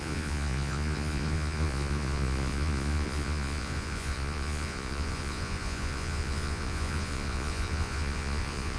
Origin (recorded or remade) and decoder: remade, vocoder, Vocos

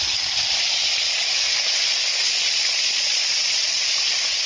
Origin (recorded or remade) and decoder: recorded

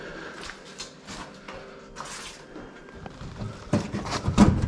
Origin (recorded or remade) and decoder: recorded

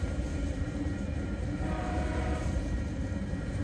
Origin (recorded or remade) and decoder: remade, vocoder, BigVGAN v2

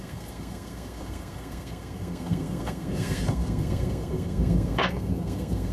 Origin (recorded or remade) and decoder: remade, codec, SNAC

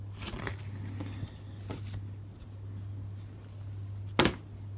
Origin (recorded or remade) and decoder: recorded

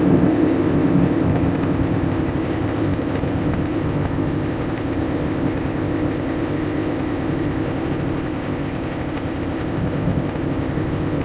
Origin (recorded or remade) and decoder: remade, codec, ZipCodec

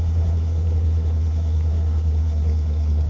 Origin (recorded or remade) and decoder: remade, codec, SNAC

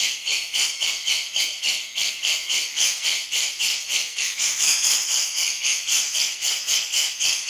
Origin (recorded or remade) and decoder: remade, codec, SNAC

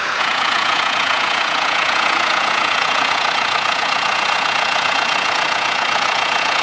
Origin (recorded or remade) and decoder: remade, vocoder, Vocos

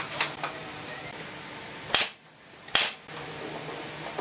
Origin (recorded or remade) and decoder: recorded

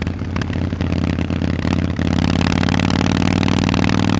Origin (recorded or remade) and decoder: recorded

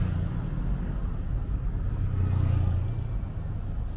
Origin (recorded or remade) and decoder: recorded